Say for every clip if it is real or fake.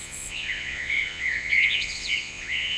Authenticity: fake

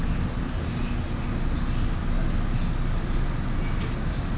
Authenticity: real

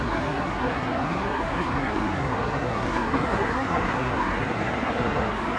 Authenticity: fake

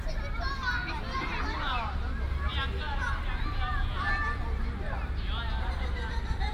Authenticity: real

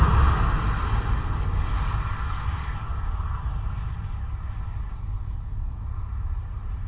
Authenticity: real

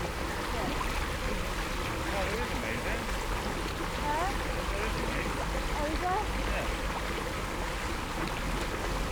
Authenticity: real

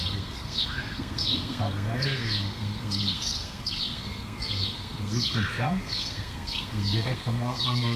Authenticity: fake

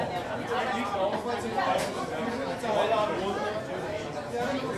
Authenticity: real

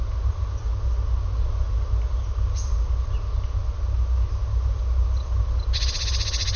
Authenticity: real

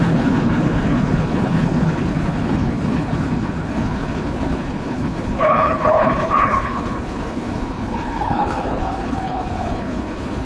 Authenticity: fake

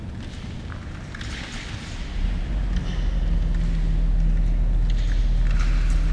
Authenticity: real